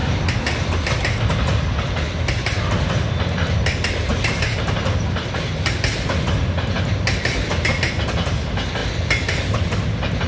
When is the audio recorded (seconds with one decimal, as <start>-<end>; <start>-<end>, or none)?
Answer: 0.0-4.1; 6.9-10.3